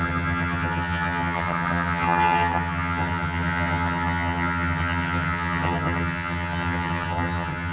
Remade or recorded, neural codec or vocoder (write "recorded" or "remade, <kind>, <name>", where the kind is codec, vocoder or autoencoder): remade, vocoder, HiFi-GAN